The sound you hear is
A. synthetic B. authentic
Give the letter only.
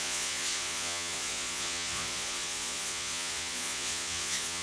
A